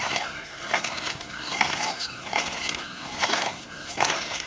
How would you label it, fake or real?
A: fake